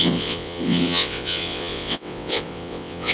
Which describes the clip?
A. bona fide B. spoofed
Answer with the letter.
B